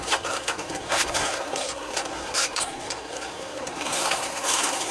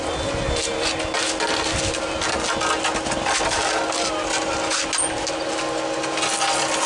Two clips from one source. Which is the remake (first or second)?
first